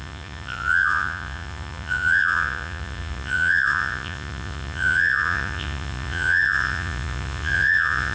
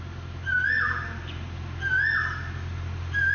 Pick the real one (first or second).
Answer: second